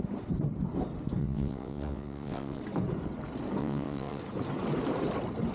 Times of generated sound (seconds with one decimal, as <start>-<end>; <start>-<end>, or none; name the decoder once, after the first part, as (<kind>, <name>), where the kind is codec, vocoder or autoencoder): 1.2-2.6 (vocoder, WaveNeXt); 3.6-4.2